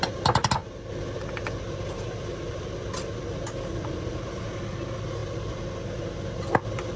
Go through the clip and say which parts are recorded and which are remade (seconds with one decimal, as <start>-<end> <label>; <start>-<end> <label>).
0.0-7.0 recorded